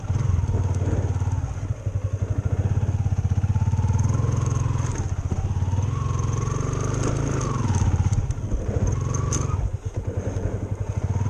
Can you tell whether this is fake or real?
real